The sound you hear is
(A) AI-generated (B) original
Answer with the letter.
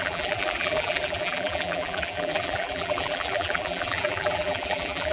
A